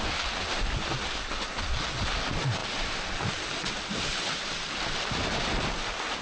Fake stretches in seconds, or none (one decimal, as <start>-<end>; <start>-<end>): none